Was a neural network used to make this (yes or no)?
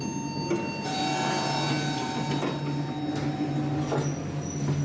no